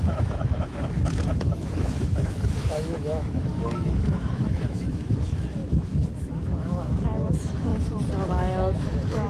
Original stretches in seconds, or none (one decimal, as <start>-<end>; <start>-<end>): 7.7-8.3